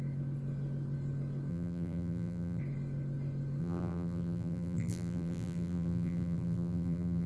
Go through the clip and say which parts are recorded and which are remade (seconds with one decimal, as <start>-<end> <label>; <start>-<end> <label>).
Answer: 0.0-1.5 recorded; 1.5-2.6 remade; 2.6-3.6 recorded; 3.6-7.3 remade

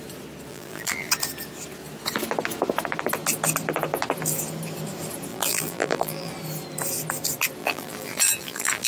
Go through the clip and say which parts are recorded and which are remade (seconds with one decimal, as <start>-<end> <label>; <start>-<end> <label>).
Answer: 0.0-0.5 recorded; 0.5-1.1 remade; 1.1-5.3 recorded; 5.3-6.3 remade; 6.3-7.6 recorded; 7.6-8.9 remade

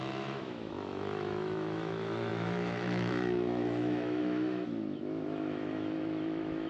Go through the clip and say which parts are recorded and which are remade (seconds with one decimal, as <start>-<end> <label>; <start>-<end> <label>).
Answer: 0.0-6.7 remade

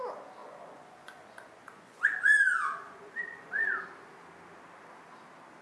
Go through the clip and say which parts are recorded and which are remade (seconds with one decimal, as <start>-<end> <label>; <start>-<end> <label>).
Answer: 0.0-0.4 recorded; 0.4-3.8 remade; 3.8-5.6 recorded

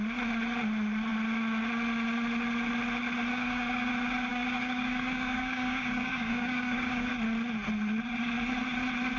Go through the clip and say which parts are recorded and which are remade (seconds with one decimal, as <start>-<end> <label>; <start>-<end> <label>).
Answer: 0.0-3.3 recorded; 3.3-3.9 remade; 3.9-4.3 recorded; 4.3-7.1 remade; 7.1-9.2 recorded